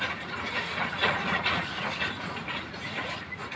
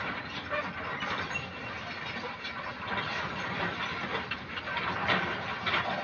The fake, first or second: first